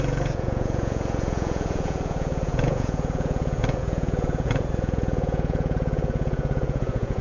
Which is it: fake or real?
fake